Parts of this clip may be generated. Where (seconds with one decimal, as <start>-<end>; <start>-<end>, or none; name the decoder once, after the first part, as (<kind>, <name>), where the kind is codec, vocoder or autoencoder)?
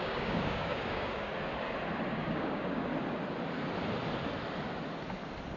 0.0-1.3 (codec, DAC); 2.1-2.9